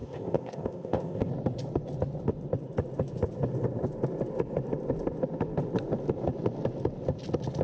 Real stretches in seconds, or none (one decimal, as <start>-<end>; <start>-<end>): 1.3-7.6